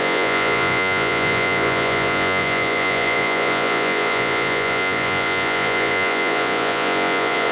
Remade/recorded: remade